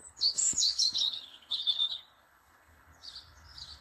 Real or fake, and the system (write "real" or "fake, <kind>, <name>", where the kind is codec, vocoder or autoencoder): fake, codec, HILCodec